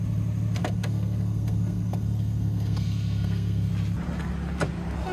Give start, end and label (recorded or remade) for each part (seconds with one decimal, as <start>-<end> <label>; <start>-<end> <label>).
0.0-0.6 recorded; 0.6-3.7 remade; 3.7-5.1 recorded